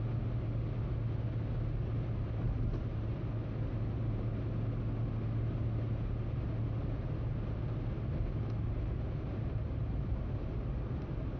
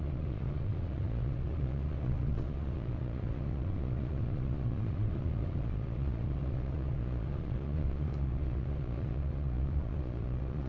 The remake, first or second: second